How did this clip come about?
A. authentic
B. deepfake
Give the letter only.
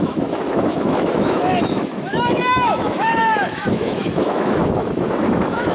B